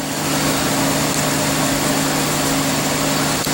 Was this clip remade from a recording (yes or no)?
no